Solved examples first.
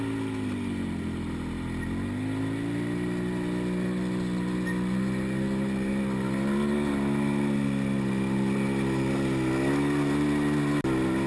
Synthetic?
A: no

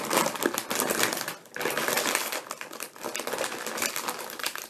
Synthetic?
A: no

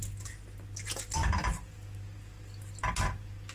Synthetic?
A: no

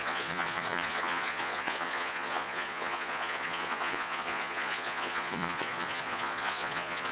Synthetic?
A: yes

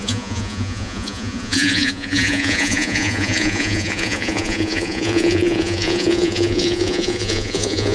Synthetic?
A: yes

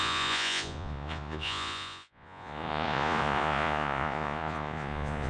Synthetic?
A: yes